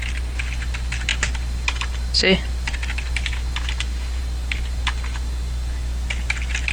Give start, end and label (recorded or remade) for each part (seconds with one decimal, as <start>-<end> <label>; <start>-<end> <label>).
0.0-1.1 recorded; 1.1-4.2 remade; 4.2-6.7 recorded